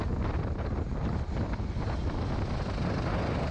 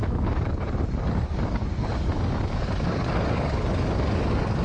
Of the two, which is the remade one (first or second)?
second